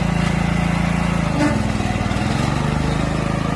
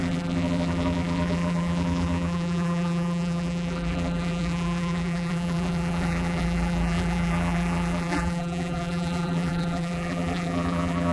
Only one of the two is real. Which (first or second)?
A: first